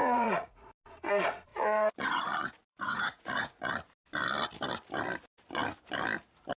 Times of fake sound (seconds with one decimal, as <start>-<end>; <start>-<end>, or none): 0.0-0.7; 1.5-3.7